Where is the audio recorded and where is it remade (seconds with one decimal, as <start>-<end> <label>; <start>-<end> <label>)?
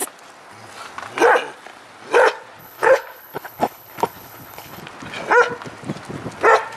0.0-2.6 recorded; 2.6-4.8 remade; 4.8-6.8 recorded